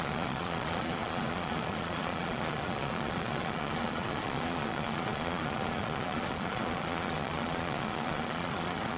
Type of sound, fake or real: fake